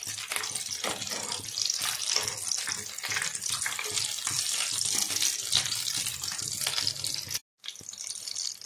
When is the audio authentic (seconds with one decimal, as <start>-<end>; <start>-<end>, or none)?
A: 0.0-8.7